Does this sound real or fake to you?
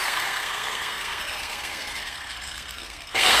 fake